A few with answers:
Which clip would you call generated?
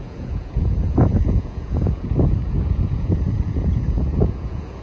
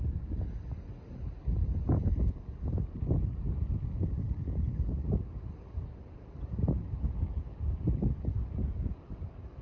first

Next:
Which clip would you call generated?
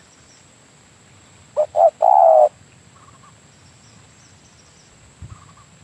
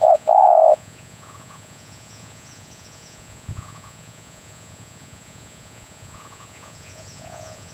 second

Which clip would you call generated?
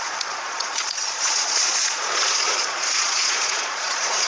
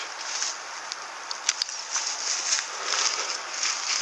first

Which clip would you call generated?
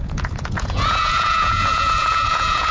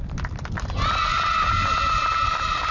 first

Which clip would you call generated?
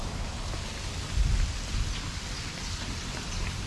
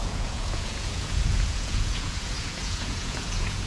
second